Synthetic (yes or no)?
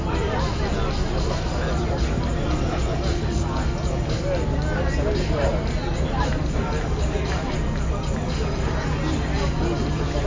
no